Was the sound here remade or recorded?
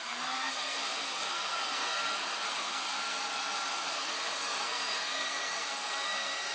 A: remade